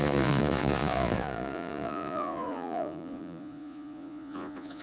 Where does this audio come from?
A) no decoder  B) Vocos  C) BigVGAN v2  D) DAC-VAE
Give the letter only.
B